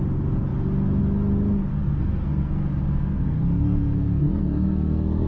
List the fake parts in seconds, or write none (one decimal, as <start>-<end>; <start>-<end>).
1.8-5.3